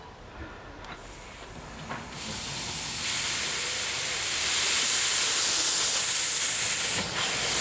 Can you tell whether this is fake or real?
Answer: real